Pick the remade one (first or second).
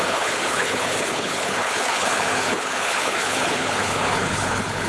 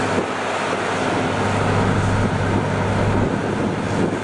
first